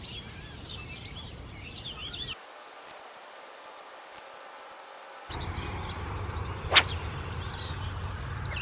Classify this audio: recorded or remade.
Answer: recorded